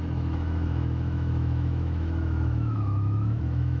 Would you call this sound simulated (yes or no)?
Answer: yes